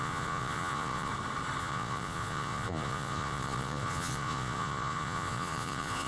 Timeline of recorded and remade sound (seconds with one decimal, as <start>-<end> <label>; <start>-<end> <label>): 0.0-1.1 remade; 1.1-1.6 recorded; 1.6-6.1 remade